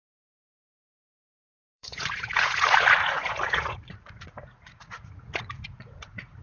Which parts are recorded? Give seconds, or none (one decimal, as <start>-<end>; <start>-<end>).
none